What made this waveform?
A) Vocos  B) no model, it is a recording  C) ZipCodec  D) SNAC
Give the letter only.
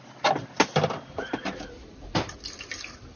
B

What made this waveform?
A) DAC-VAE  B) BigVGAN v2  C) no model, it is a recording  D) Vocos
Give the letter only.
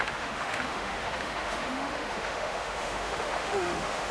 A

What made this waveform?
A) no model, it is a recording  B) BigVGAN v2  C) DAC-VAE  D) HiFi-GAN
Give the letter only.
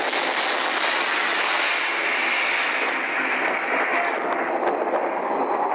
A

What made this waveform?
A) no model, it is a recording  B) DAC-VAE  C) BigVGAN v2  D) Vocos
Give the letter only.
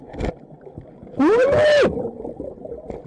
A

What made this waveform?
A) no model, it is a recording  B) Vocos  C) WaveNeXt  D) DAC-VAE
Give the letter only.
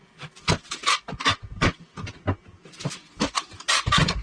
A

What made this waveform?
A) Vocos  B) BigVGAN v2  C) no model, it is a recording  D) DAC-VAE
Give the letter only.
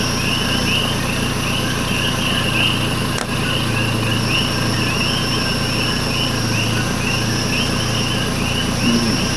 C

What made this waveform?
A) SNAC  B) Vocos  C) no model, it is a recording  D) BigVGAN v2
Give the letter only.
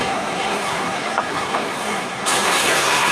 A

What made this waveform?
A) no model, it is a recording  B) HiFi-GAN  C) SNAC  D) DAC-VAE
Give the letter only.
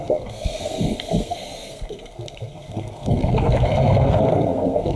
C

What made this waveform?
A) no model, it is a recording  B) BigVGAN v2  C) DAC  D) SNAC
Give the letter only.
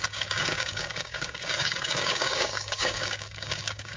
C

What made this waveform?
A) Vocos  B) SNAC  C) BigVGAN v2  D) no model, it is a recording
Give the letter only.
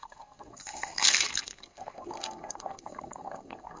B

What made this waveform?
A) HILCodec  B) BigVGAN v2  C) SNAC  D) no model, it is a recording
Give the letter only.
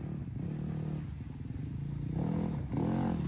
D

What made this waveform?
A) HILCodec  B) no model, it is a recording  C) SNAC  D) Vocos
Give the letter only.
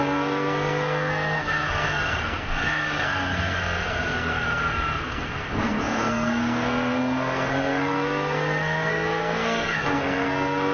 C